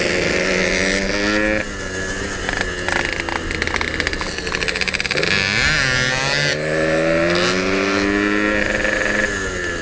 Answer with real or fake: real